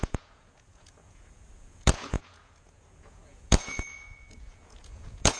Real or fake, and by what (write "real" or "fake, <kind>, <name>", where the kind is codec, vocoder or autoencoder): fake, vocoder, Vocos